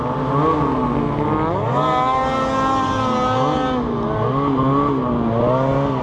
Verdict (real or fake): real